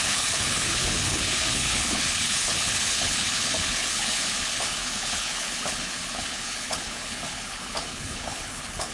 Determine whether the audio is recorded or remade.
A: remade